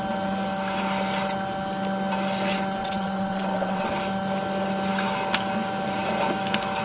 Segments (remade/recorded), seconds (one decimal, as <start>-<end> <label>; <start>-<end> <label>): 0.0-2.8 recorded; 2.8-3.9 remade; 3.9-6.8 recorded